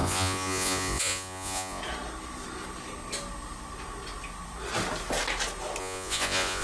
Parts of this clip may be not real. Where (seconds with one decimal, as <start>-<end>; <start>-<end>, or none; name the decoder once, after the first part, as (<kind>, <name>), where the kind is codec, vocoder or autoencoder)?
0.0-1.8 (vocoder, Vocos); 5.8-6.6